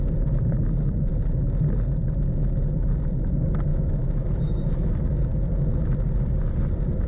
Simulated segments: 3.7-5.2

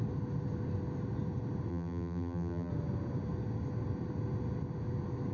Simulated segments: 1.7-2.7